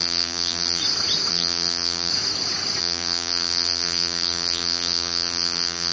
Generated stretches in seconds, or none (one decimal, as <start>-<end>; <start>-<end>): 0.0-0.8; 1.3-2.1; 2.8-5.9

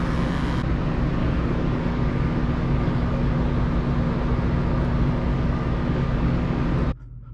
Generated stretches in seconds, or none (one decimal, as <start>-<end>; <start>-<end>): 1.2-3.3; 5.3-6.6